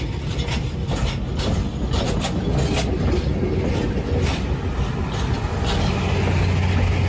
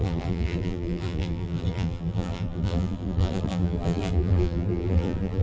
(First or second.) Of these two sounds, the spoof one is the second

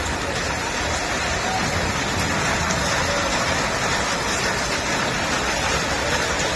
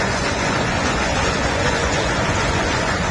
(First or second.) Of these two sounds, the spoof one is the second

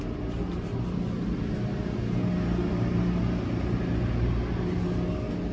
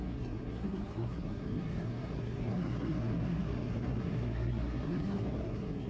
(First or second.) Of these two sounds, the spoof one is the second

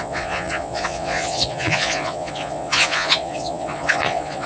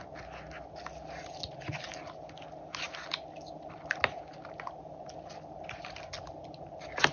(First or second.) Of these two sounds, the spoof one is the first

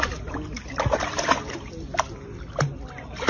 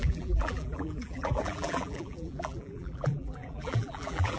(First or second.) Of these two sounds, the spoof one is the second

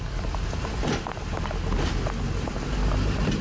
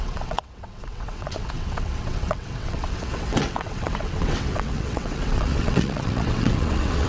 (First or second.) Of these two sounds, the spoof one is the second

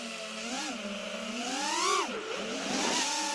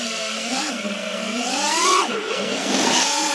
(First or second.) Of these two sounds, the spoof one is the second